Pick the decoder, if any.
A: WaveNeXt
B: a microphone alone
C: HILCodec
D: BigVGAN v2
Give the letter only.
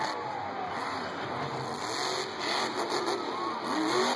B